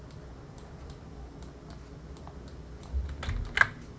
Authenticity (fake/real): real